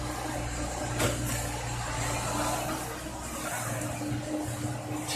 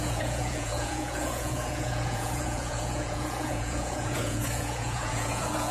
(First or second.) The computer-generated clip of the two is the second